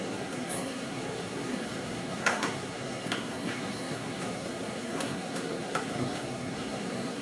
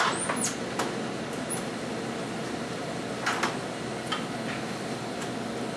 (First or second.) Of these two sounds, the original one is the second